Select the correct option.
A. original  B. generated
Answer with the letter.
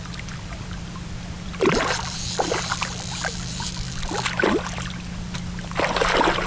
B